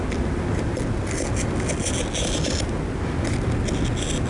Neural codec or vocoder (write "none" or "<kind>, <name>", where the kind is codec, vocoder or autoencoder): none